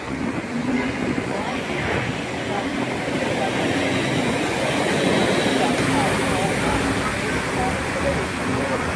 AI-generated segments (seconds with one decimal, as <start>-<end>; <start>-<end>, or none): 0.0-2.7; 3.5-5.4; 7.7-9.0